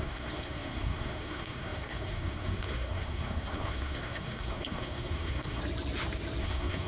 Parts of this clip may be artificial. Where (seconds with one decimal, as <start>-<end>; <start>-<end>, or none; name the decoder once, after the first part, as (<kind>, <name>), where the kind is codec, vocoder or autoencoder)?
0.0-5.6 (codec, SNAC); 6.4-6.9